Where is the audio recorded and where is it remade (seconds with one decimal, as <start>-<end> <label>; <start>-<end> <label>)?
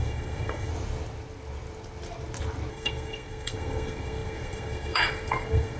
0.0-0.7 remade; 0.7-2.7 recorded; 2.7-5.8 remade